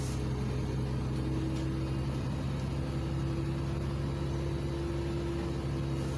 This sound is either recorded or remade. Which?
recorded